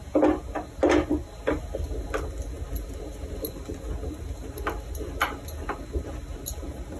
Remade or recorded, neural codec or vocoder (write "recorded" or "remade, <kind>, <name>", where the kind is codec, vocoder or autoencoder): recorded